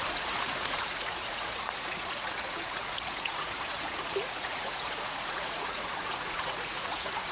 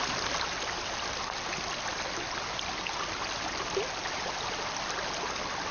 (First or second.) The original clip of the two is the second